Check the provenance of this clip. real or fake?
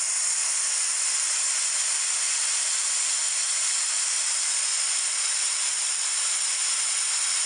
real